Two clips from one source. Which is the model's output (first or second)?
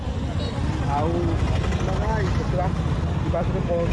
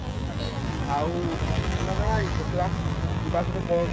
second